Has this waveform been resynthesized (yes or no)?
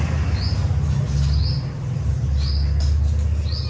no